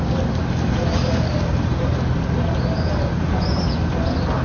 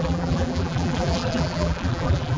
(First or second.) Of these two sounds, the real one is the first